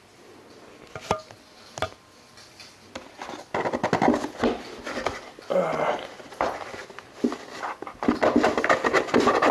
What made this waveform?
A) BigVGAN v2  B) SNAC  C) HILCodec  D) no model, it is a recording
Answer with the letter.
D